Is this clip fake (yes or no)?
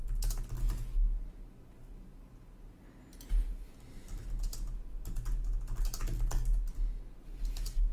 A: no